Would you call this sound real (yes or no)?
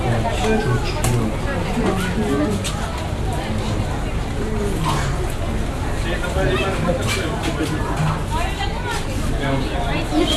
yes